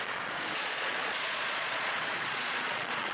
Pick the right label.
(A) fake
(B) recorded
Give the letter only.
A